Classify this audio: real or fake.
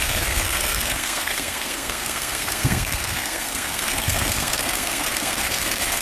fake